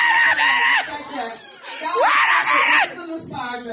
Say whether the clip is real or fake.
real